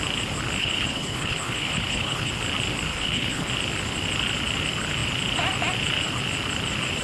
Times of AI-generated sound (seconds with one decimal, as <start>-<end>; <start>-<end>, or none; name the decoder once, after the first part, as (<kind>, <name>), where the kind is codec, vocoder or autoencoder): 0.6-2.3 (codec, HILCodec); 2.9-3.5